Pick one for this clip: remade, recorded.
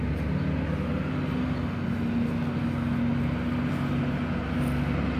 recorded